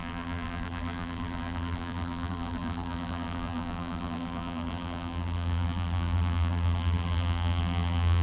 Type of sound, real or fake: fake